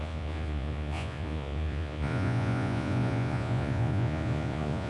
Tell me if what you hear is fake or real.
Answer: fake